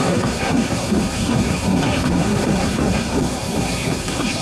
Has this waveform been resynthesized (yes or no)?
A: yes